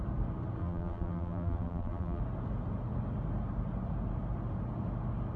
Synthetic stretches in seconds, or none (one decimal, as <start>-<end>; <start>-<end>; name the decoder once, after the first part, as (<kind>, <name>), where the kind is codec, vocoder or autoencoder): 0.6-2.2 (vocoder, BigVGAN v2)